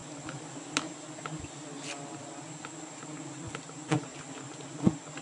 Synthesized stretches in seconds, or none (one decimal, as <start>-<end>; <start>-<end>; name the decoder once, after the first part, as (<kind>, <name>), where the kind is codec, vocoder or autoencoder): none